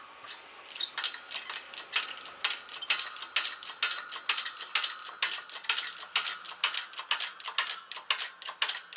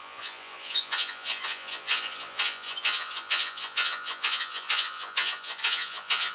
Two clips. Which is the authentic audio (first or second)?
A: first